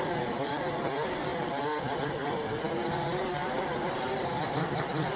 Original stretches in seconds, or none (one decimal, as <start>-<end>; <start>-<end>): 0.0-5.2